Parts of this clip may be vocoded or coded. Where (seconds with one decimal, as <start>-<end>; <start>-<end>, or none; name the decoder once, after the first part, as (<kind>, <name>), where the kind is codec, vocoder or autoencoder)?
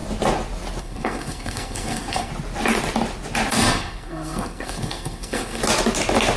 0.8-2.3 (codec, SNAC); 3.5-5.6